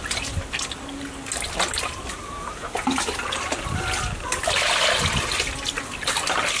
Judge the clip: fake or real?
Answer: real